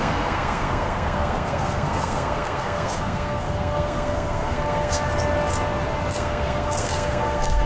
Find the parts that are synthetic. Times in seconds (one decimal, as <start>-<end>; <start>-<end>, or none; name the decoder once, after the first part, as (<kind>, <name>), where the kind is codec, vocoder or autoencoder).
0.0-5.1 (codec, SNAC); 6.1-7.7